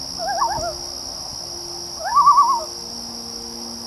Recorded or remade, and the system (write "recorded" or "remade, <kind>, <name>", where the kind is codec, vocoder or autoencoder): recorded